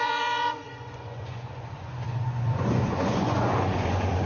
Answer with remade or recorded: remade